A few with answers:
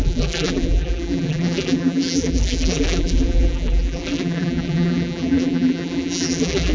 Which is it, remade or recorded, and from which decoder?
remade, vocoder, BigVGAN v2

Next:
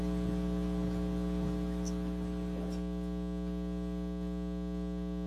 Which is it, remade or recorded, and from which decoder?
recorded